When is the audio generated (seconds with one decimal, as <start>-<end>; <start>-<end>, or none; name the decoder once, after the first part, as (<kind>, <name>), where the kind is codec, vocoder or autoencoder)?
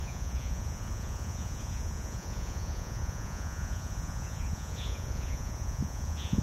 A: 0.0-6.4 (vocoder, Vocos)